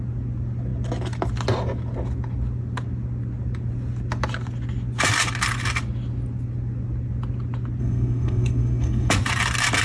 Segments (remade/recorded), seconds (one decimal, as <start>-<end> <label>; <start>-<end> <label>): 0.0-7.8 recorded; 7.8-9.1 remade; 9.1-9.8 recorded